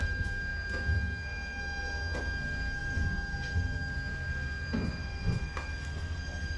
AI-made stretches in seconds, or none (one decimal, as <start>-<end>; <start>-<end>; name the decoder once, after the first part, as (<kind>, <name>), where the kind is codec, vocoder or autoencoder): 0.0-6.6 (codec, SNAC)